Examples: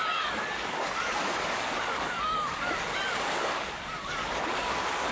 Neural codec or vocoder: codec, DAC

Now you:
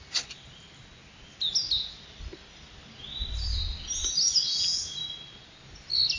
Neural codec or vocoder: none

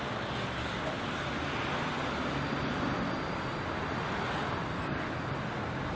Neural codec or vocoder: none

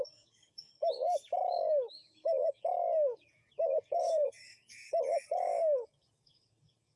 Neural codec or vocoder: codec, DAC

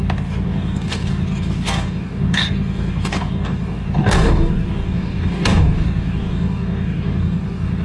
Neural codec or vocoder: codec, DAC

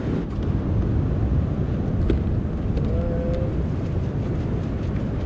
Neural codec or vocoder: none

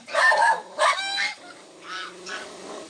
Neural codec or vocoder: codec, DAC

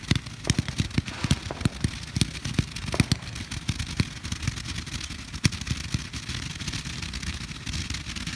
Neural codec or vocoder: none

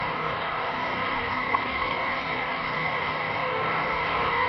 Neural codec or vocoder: codec, DAC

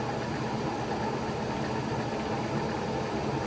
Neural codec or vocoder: none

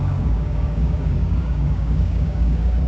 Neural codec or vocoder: codec, DAC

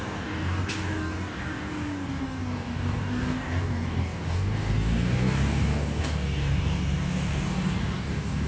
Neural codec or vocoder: codec, DAC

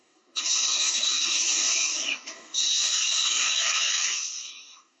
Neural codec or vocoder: codec, DAC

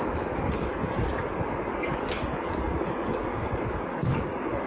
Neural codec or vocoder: codec, DAC